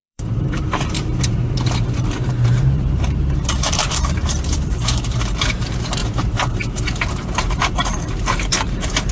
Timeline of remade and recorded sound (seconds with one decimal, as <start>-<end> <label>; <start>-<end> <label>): 0.0-9.1 remade